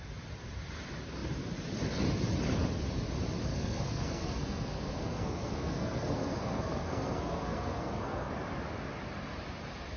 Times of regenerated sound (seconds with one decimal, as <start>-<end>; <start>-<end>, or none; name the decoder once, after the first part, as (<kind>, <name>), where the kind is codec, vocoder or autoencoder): 3.5-8.3 (codec, SNAC)